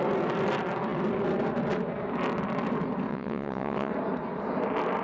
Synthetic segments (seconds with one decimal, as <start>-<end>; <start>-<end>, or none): 3.1-3.9

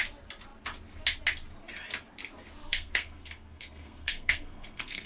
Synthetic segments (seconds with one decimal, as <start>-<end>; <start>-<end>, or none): 2.6-5.1

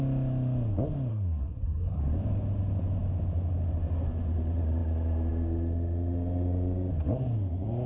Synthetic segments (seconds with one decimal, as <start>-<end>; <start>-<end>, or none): 1.1-2.0

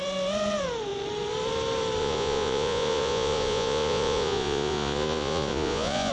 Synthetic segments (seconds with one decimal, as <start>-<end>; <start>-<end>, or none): 2.0-6.1

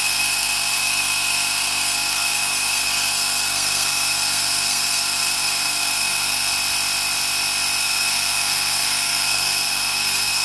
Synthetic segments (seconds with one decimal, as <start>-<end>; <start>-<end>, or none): 0.0-6.5; 7.8-10.4